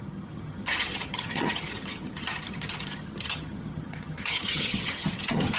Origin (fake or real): fake